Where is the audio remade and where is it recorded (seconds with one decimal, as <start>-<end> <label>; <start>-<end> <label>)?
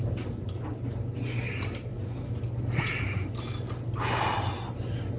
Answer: 0.0-5.2 recorded